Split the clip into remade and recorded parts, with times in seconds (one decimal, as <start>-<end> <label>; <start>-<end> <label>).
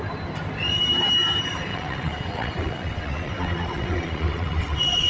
0.0-1.7 recorded; 1.7-5.1 remade